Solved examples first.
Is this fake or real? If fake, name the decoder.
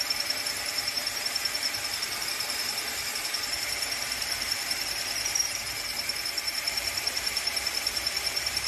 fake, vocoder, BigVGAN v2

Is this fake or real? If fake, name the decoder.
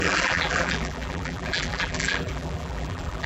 fake, vocoder, BigVGAN v2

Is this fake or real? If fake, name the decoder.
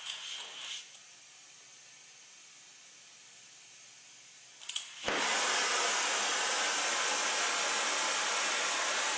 real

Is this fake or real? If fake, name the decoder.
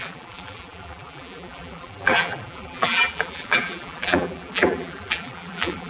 fake, vocoder, BigVGAN v2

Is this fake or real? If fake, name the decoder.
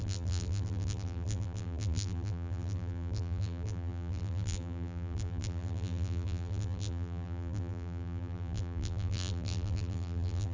fake, vocoder, BigVGAN v2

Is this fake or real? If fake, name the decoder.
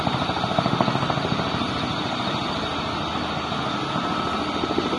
real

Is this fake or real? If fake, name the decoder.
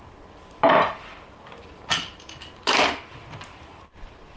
fake, vocoder, BigVGAN v2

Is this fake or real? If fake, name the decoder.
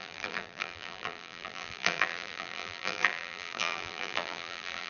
fake, vocoder, BigVGAN v2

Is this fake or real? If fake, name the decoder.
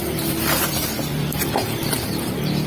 fake, vocoder, BigVGAN v2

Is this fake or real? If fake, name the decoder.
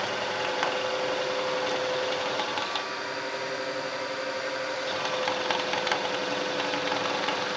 real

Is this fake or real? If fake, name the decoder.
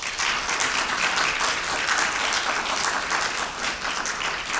fake, vocoder, BigVGAN v2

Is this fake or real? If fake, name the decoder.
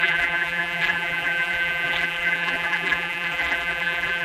fake, vocoder, BigVGAN v2